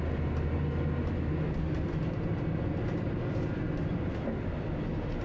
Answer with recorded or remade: recorded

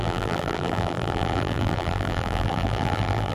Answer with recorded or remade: remade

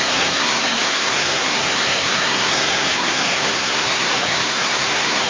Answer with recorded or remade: remade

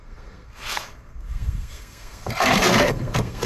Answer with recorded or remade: remade